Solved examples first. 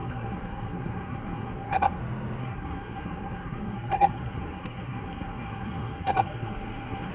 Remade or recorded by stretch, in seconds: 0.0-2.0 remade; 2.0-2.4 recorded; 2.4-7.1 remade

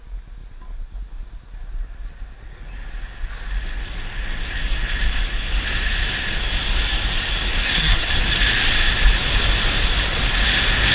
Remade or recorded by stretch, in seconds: 0.0-7.6 recorded; 7.6-8.1 remade; 8.1-10.9 recorded

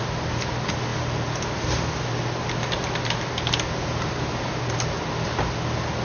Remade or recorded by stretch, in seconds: 0.0-6.0 recorded

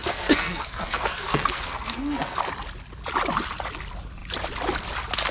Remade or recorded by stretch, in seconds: 0.0-2.4 remade; 2.4-5.3 recorded

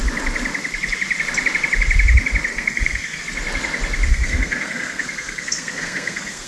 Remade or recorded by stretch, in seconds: 0.0-2.5 recorded; 2.5-3.2 remade; 3.2-4.1 recorded; 4.1-6.5 remade